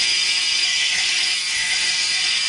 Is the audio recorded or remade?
remade